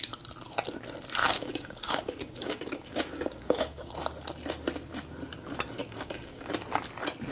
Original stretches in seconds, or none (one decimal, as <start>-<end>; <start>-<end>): 0.0-1.2; 3.9-5.8; 6.5-7.3